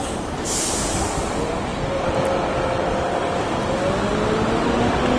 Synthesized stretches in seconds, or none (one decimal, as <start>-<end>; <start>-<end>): none